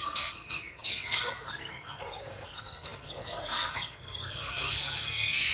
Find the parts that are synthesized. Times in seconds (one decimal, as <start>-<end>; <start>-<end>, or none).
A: 0.0-5.5